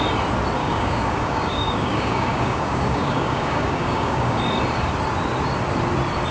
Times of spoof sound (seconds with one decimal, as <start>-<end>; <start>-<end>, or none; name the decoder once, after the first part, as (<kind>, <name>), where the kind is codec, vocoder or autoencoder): 0.6-4.4 (codec, DAC)